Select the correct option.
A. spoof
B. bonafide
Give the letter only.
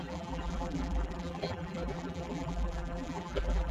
A